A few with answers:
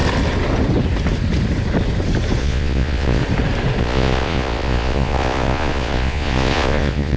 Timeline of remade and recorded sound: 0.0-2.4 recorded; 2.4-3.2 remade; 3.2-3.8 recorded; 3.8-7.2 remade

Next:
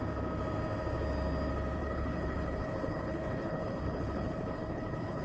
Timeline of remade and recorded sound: 0.0-1.8 recorded; 1.8-5.2 remade

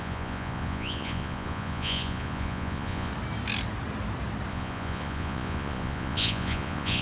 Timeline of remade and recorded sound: 0.0-3.1 remade; 3.1-4.5 recorded; 4.5-7.0 remade

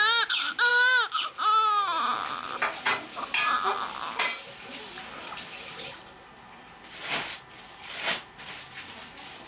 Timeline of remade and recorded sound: 0.0-9.5 recorded

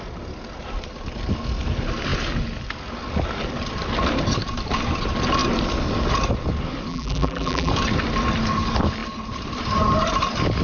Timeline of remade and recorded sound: 0.0-6.9 recorded; 6.9-7.7 remade; 7.7-10.6 recorded

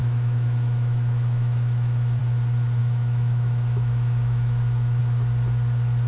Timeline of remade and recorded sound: 0.0-2.2 remade; 2.2-2.8 recorded; 2.8-5.0 remade; 5.0-6.1 recorded

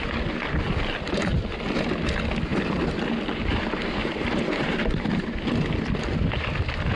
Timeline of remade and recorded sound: 0.0-2.5 recorded; 2.5-3.0 remade; 3.0-4.0 recorded; 4.0-5.1 remade; 5.1-7.0 recorded

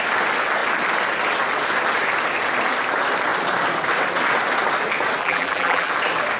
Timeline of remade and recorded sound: 0.0-5.2 recorded; 5.2-5.9 remade; 5.9-6.4 recorded